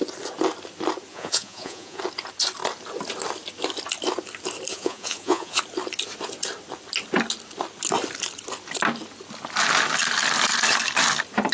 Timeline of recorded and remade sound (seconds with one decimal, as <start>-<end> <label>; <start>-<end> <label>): 0.0-1.1 recorded; 1.1-2.0 remade; 2.0-4.7 recorded; 4.7-5.6 remade; 5.6-11.5 recorded